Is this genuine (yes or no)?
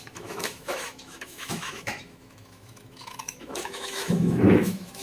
no